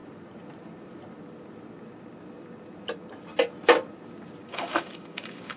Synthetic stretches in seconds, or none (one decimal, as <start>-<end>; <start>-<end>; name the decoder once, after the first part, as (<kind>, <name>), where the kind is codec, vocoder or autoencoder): 4.4-5.6 (codec, DAC)